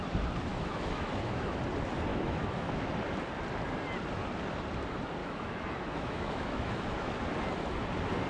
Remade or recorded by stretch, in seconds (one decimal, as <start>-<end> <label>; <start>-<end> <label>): 0.0-0.5 recorded; 0.5-1.6 remade; 1.6-2.1 recorded; 2.1-2.9 remade; 2.9-5.2 recorded; 5.2-7.1 remade; 7.1-8.3 recorded

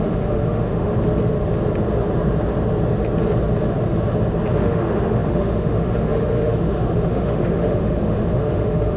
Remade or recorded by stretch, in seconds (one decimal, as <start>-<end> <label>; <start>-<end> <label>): 0.0-0.9 remade; 0.9-4.5 recorded; 4.5-9.0 remade